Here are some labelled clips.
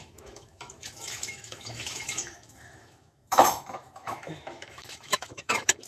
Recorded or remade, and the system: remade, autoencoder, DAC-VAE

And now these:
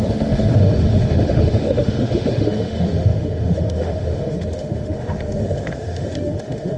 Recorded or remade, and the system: remade, autoencoder, DAC-VAE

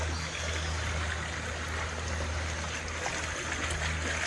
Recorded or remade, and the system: recorded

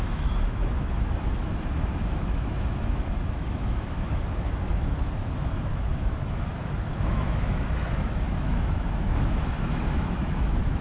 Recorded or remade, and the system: remade, autoencoder, DAC-VAE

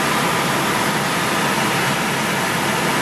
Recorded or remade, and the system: recorded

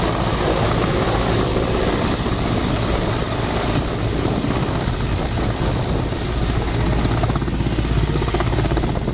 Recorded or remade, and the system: recorded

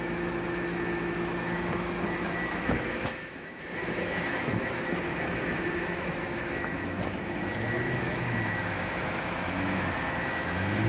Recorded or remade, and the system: remade, autoencoder, DAC-VAE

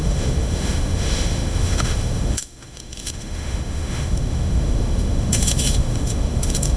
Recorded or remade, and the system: remade, autoencoder, DAC-VAE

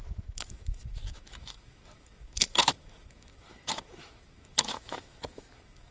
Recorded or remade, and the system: remade, autoencoder, DAC-VAE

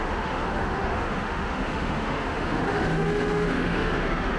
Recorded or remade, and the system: remade, autoencoder, DAC-VAE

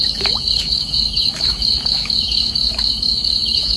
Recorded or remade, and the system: remade, autoencoder, DAC-VAE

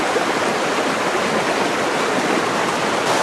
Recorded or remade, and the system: recorded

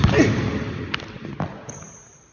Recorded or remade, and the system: recorded